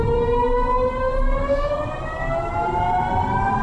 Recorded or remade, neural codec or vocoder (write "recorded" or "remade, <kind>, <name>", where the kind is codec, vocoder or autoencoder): recorded